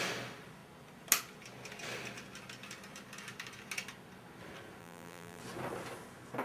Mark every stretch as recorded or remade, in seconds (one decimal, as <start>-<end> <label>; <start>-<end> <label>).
0.0-4.8 recorded; 4.8-5.4 remade; 5.4-6.4 recorded